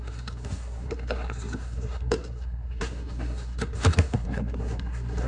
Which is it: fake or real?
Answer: fake